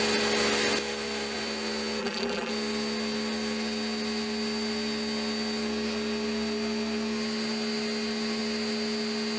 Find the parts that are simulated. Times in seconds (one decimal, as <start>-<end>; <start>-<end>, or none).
2.0-2.5